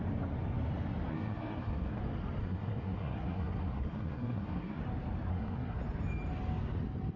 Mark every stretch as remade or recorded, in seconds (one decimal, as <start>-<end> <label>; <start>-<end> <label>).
0.0-1.1 recorded; 1.1-2.0 remade; 2.0-2.4 recorded; 2.4-4.8 remade; 4.8-5.3 recorded; 5.3-5.8 remade; 5.8-7.2 recorded